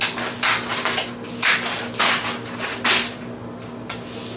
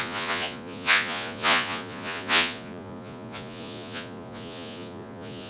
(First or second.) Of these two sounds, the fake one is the second